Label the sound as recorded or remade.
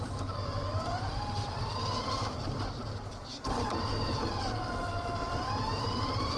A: remade